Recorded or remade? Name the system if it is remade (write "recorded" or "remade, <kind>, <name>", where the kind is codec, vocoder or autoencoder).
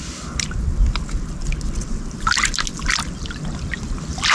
recorded